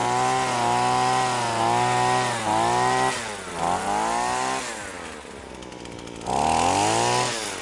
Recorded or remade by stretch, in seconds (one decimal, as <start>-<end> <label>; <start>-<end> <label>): 0.0-7.6 recorded